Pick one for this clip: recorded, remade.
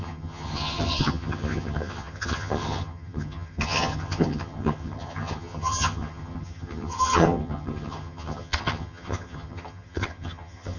remade